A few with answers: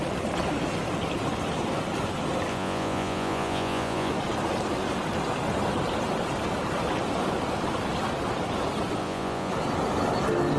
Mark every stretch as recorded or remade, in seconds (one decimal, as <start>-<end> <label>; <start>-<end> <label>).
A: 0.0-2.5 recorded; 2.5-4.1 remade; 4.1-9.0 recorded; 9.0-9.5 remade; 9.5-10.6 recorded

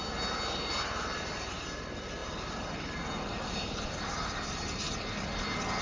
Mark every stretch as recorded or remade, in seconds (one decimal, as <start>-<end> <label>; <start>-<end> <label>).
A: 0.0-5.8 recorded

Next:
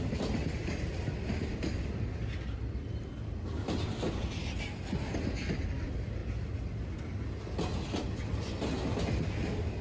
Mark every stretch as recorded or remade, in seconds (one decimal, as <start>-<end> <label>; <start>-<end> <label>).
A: 0.0-9.8 recorded